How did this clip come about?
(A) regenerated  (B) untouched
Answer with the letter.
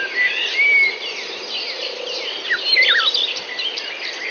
B